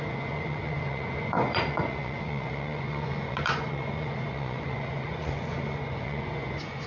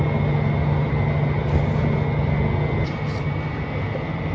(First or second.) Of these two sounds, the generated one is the first